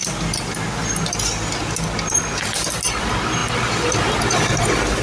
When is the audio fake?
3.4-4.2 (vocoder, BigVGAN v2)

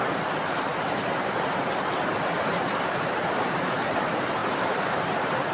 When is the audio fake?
0.7-1.6 (vocoder, BigVGAN v2); 2.5-3.7; 4.4-5.5